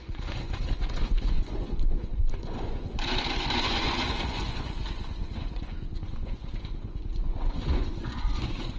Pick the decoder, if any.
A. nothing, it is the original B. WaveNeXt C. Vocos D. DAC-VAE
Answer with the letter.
C